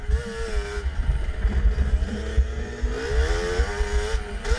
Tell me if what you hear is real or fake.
real